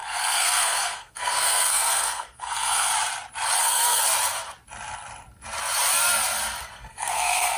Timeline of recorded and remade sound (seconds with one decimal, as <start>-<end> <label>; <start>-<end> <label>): 0.0-2.9 remade; 2.9-3.6 recorded; 3.6-4.0 remade; 4.0-6.6 recorded; 6.6-7.6 remade